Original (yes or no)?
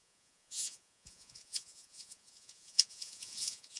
no